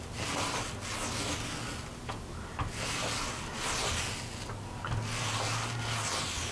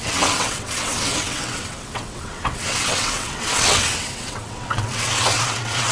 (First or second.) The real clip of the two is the first